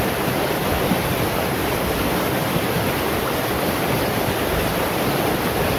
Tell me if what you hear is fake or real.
real